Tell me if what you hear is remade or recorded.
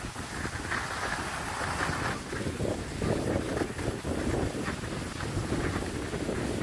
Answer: recorded